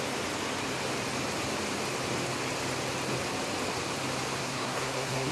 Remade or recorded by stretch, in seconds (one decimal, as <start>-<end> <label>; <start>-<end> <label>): 0.0-4.4 recorded; 4.4-5.3 remade